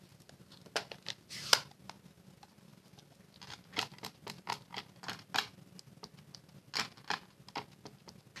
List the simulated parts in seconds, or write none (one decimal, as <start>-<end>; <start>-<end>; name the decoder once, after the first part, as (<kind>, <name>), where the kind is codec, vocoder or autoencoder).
none